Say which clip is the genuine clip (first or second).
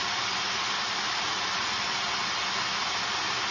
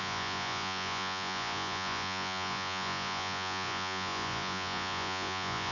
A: first